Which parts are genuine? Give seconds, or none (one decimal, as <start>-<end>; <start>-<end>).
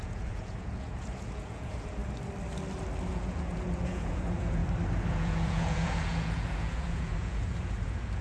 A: 2.0-3.1; 4.6-5.1